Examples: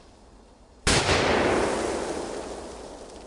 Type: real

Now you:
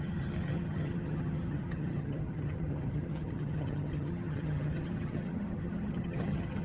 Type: fake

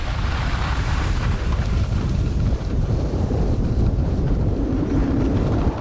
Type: fake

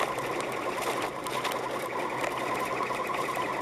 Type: real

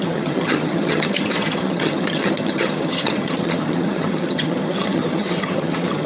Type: fake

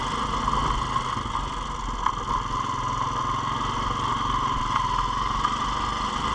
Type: real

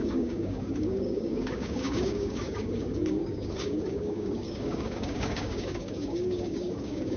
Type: fake